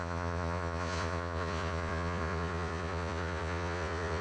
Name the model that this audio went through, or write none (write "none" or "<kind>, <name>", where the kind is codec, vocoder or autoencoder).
vocoder, Vocos